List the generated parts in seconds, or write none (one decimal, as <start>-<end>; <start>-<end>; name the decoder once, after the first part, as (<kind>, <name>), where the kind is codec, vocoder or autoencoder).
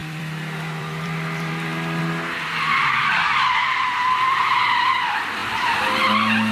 0.0-2.0 (vocoder, BigVGAN v2)